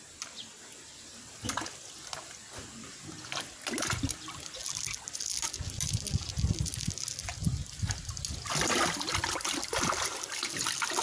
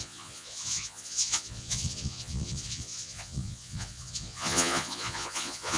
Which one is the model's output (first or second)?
second